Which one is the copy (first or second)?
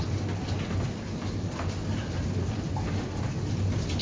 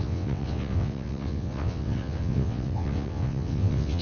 second